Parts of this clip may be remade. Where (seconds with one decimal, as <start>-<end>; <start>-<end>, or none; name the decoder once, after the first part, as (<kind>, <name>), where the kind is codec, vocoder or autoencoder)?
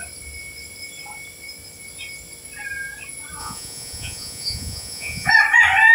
3.4-5.3 (vocoder, Vocos)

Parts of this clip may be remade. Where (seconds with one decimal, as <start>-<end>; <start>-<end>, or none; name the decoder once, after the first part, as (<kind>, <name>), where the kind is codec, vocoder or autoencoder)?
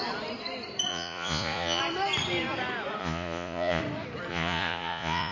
0.9-1.8 (vocoder, Vocos); 3.0-3.8; 4.3-5.3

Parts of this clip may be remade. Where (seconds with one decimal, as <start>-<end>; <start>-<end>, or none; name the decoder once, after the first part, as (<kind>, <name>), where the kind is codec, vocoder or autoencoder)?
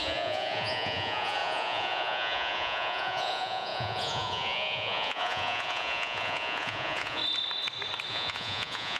0.0-7.2 (vocoder, Vocos); 8.1-9.0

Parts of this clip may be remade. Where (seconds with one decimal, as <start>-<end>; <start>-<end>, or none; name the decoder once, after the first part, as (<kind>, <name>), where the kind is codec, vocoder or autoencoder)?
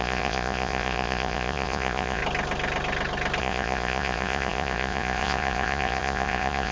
0.0-2.2 (vocoder, Vocos); 3.4-6.7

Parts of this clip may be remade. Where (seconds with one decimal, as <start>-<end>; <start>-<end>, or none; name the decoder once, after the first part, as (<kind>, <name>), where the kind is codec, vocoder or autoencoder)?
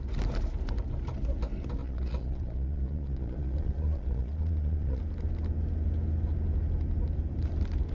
1.8-5.0 (vocoder, Vocos)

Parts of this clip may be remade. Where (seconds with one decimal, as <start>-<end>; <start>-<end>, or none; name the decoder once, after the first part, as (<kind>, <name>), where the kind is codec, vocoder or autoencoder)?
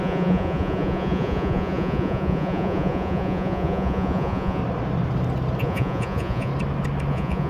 0.0-4.6 (vocoder, Vocos); 5.6-6.5; 7.1-7.5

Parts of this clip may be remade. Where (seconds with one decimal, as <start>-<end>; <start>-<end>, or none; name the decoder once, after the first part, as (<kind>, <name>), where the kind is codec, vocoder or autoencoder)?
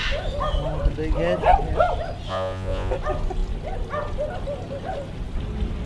2.3-2.9 (vocoder, Vocos)